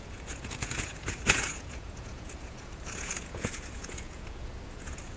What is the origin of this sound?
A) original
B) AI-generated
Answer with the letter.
B